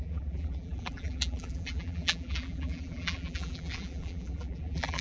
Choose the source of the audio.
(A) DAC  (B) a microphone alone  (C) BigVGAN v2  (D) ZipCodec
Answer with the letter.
C